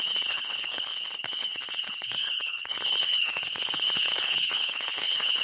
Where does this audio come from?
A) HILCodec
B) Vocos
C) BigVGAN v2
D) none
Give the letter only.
A